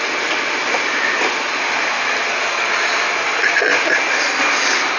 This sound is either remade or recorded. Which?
recorded